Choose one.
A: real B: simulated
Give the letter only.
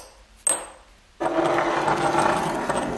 A